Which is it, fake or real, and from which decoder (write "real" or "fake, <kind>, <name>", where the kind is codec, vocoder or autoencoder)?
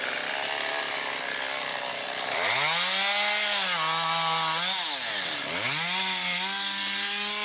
real